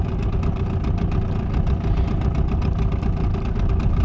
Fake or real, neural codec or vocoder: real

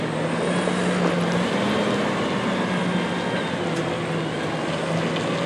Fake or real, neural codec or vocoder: real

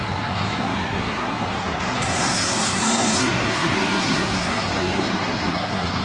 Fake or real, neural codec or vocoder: fake, codec, SNAC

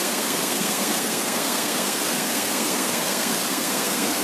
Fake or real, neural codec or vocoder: fake, codec, SNAC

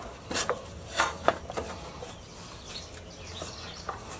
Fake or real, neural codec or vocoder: real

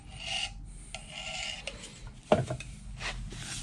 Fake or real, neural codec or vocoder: real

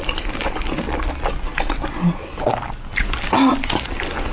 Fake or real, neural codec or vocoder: real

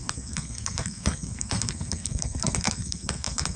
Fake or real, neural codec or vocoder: fake, codec, SNAC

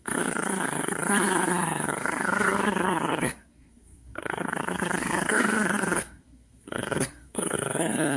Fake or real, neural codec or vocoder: fake, codec, SNAC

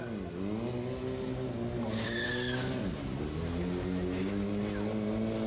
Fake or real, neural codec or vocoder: real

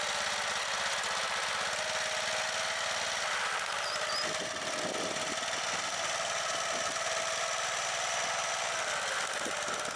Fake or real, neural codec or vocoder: real